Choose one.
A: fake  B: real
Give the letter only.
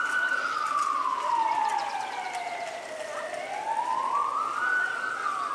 B